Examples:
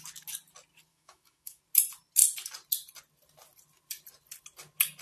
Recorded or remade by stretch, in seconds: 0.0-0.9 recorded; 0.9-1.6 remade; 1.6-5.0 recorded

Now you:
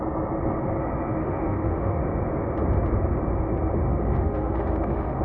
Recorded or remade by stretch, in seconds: 0.0-1.2 recorded; 1.2-2.0 remade; 2.0-3.9 recorded; 3.9-5.2 remade

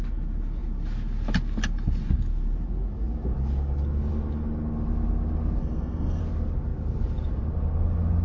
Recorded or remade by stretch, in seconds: 0.0-5.6 recorded; 5.6-6.2 remade; 6.2-8.2 recorded

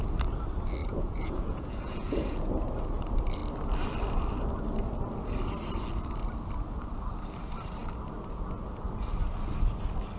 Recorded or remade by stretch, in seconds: 0.0-0.8 recorded; 0.8-2.5 remade; 2.5-10.2 recorded

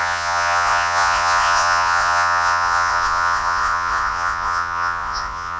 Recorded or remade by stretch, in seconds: 0.0-5.6 remade